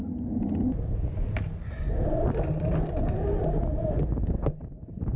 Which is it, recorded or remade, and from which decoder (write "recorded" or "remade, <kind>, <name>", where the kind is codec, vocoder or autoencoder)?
recorded